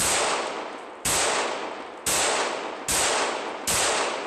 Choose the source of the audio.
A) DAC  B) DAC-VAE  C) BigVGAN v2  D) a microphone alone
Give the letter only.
D